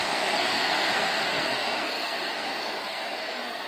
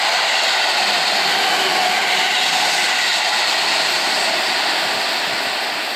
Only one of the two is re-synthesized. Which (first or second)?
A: first